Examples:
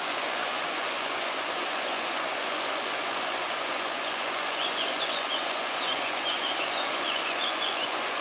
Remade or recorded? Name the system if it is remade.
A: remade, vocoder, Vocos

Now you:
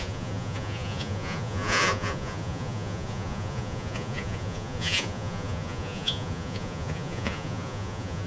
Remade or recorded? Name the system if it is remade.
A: remade, vocoder, Vocos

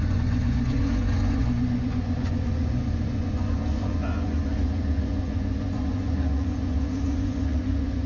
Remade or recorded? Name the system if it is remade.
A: remade, vocoder, Vocos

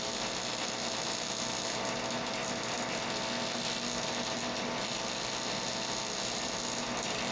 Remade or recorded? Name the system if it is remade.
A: recorded